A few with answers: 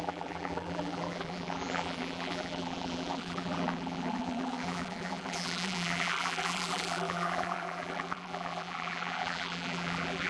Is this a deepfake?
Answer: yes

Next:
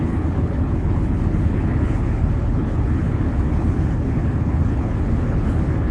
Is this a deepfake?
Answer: yes